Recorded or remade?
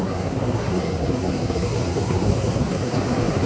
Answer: remade